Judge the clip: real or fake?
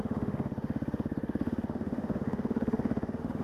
fake